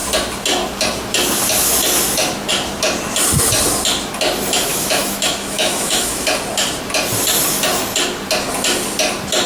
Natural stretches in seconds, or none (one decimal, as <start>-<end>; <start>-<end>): 0.0-4.7; 6.3-9.5